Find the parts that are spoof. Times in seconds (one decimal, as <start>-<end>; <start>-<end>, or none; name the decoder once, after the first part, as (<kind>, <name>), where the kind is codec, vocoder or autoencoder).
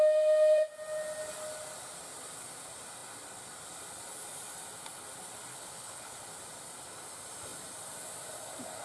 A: 5.5-6.2 (codec, HILCodec)